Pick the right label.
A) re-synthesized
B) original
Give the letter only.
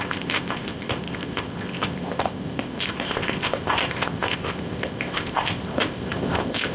A